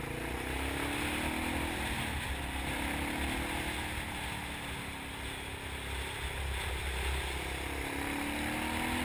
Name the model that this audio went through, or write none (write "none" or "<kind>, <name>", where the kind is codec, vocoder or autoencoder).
none